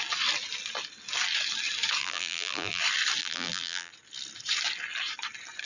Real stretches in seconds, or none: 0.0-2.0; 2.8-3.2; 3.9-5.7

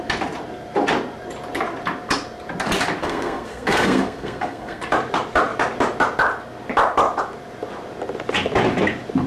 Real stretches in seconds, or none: 0.0-3.0; 4.8-9.3

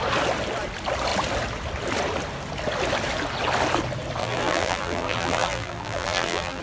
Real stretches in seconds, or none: 0.0-4.2

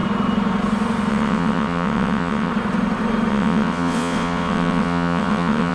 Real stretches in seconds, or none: 0.0-1.1; 2.5-3.3

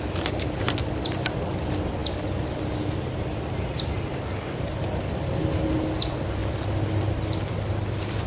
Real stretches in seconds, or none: 0.0-8.3

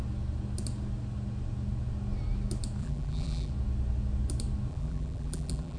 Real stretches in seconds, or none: 0.0-2.8; 3.5-4.7

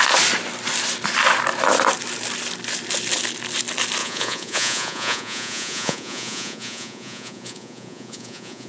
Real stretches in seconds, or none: 0.0-4.0